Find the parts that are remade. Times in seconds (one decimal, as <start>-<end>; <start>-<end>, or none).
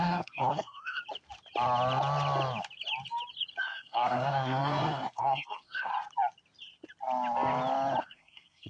0.0-1.0; 3.6-5.9; 8.0-8.7